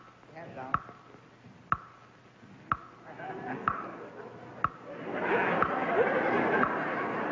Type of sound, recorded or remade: recorded